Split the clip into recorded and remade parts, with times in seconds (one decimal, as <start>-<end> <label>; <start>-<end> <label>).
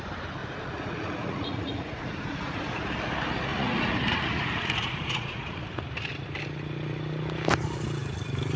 0.0-0.4 recorded; 0.4-2.8 remade; 2.8-3.5 recorded; 3.5-5.6 remade; 5.6-8.6 recorded